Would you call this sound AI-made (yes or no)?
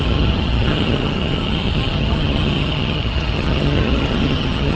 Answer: yes